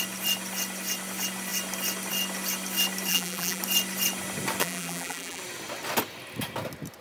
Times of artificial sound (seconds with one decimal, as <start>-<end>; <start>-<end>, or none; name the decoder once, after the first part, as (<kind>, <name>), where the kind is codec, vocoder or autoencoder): 3.1-3.6 (vocoder, BigVGAN v2); 4.6-5.4